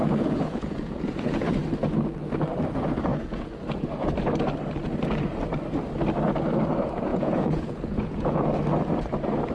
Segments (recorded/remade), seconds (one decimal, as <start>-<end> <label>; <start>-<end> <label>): 0.0-1.5 remade; 1.5-3.1 recorded; 3.1-3.6 remade; 3.6-7.1 recorded; 7.1-8.5 remade; 8.5-9.5 recorded

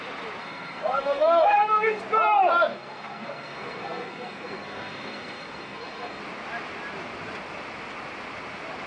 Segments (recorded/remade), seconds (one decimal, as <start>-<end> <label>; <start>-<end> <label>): 0.0-0.4 recorded; 0.4-2.0 remade; 2.0-2.7 recorded; 2.7-6.2 remade; 6.2-8.9 recorded

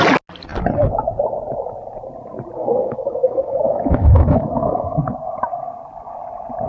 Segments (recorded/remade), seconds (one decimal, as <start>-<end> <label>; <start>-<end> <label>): 0.0-2.6 recorded; 2.6-5.0 remade; 5.0-6.7 recorded